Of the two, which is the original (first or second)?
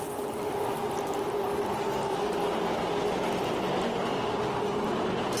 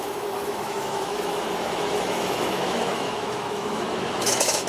first